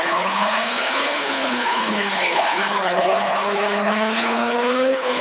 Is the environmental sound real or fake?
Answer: fake